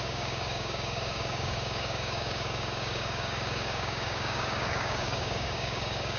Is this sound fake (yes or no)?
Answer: yes